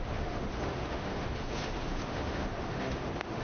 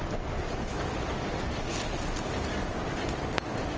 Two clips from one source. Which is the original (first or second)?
second